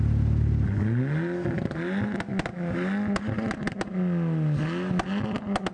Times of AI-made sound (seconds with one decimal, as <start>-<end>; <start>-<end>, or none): none